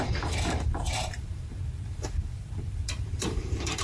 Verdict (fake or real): fake